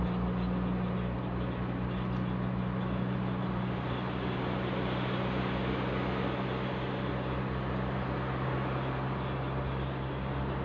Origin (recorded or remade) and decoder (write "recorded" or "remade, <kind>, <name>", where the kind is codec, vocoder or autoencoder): recorded